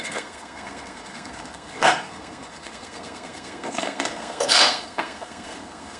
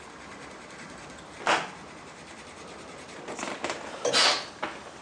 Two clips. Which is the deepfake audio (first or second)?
first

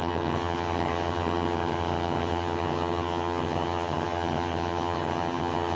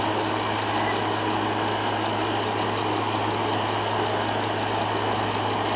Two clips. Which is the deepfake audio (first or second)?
first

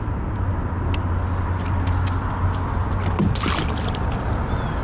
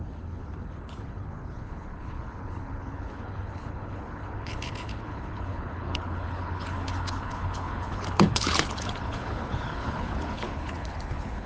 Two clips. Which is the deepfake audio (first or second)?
second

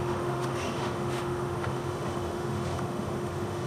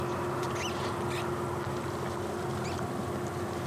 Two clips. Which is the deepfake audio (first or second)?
first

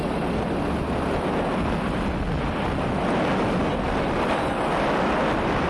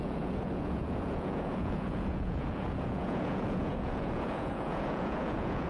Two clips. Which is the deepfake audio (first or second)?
second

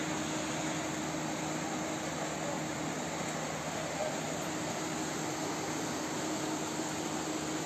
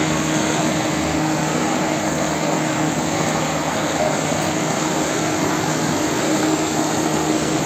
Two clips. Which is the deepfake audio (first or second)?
second